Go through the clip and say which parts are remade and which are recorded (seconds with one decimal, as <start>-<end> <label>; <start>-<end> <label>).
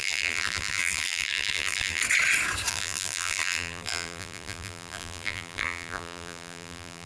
0.0-2.0 remade; 2.0-2.7 recorded; 2.7-7.1 remade